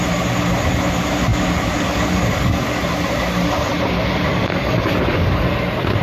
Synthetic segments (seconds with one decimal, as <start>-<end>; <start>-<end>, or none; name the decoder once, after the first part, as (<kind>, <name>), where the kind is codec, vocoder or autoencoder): 1.3-2.8 (codec, DAC); 4.3-5.4